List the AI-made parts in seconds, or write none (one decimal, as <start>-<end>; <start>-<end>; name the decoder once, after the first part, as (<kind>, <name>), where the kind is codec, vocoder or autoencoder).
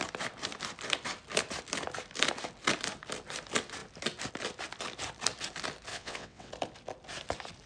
5.9-6.5 (vocoder, WaveNeXt)